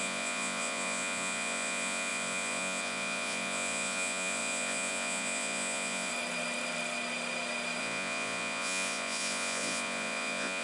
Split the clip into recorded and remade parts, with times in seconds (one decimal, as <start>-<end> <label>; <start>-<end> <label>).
0.0-6.1 remade; 6.1-7.8 recorded; 7.8-10.6 remade

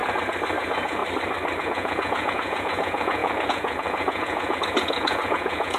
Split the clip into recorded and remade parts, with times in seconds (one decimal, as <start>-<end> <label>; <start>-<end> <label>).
0.0-0.6 recorded; 0.6-1.0 remade; 1.0-1.6 recorded; 1.6-5.8 remade

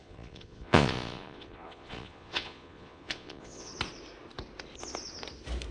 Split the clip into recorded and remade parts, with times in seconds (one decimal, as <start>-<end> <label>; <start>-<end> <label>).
0.0-3.7 remade; 3.7-5.7 recorded

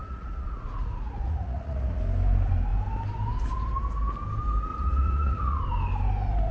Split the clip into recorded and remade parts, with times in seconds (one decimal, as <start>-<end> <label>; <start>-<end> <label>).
0.0-2.0 remade; 2.0-4.7 recorded; 4.7-5.6 remade; 5.6-6.5 recorded

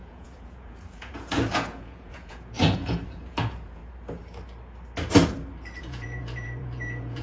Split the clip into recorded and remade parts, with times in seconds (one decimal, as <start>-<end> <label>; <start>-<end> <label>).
0.0-3.8 remade; 3.8-5.8 recorded; 5.8-7.2 remade